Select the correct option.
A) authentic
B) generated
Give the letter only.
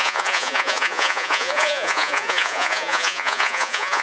B